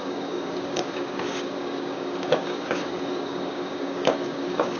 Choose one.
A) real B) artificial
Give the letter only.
B